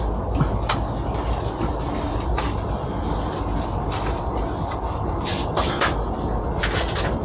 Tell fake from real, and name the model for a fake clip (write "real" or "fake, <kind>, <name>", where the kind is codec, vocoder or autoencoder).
real